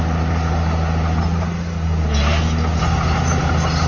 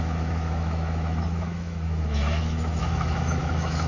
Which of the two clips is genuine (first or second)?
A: first